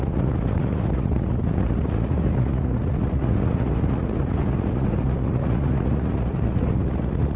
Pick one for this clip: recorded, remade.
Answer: remade